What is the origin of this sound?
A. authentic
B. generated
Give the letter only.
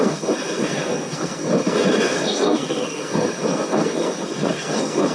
B